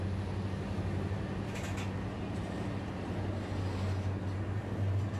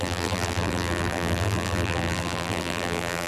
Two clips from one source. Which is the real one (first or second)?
first